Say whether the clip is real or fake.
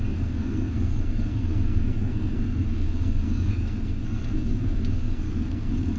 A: fake